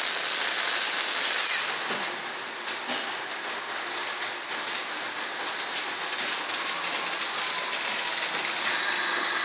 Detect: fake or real real